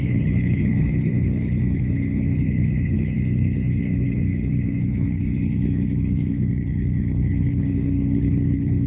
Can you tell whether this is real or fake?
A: fake